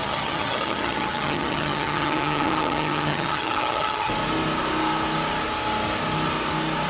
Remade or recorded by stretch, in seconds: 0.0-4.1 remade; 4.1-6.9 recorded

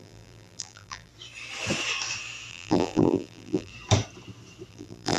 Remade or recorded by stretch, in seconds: 0.0-1.1 remade; 1.1-2.5 recorded; 2.5-3.7 remade; 3.7-4.7 recorded; 4.7-5.2 remade

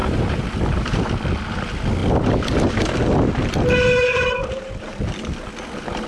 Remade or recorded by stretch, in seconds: 0.0-1.1 remade; 1.1-4.4 recorded; 4.4-5.0 remade; 5.0-6.1 recorded

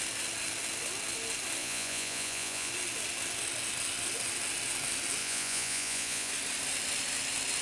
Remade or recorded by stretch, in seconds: 0.0-1.6 recorded; 1.6-2.7 remade; 2.7-5.2 recorded; 5.2-6.3 remade; 6.3-7.6 recorded